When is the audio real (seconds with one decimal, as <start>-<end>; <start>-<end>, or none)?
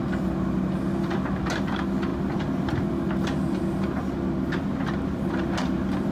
0.0-6.1